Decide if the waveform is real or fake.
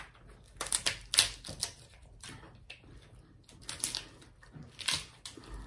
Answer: real